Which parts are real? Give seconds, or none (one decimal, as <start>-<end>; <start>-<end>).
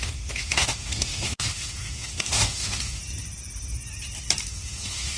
3.0-4.5